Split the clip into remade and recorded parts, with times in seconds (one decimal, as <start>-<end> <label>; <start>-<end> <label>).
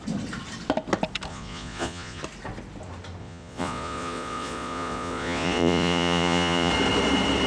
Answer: 0.0-1.3 recorded; 1.3-2.2 remade; 2.2-3.2 recorded; 3.2-6.7 remade; 6.7-7.5 recorded